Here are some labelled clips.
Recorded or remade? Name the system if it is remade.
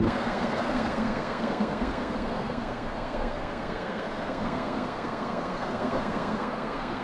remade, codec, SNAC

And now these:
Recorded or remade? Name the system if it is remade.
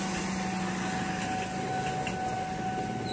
recorded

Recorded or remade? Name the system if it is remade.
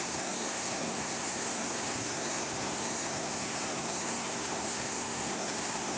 remade, codec, SNAC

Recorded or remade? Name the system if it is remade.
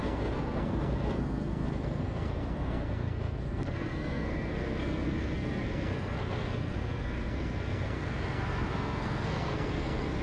remade, codec, SNAC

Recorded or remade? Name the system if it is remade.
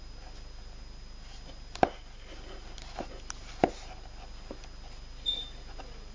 recorded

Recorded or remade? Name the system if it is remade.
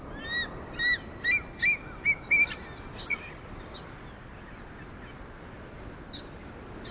recorded